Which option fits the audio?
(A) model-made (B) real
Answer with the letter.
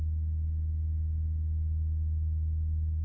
B